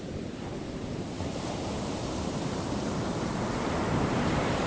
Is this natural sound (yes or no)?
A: yes